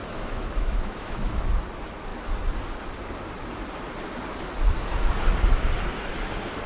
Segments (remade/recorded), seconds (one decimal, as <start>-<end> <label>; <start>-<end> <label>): 0.0-1.5 remade; 1.5-6.7 recorded